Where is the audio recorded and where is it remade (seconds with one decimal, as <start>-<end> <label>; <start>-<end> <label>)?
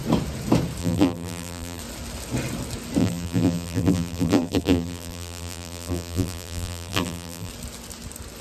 0.0-0.8 recorded; 0.8-1.8 remade; 1.8-3.0 recorded; 3.0-7.5 remade; 7.5-8.4 recorded